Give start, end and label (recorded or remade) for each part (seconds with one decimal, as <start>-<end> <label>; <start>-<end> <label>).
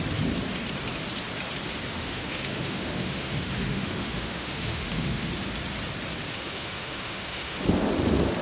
0.0-1.9 recorded; 1.9-5.3 remade; 5.3-6.3 recorded; 6.3-7.6 remade; 7.6-8.4 recorded